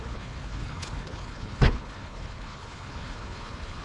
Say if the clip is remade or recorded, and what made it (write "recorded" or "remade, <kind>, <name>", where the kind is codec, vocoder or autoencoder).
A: remade, codec, HILCodec